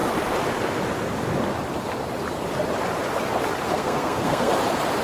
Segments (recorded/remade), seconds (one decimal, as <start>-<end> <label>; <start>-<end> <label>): 0.0-3.7 recorded; 3.7-4.5 remade; 4.5-5.0 recorded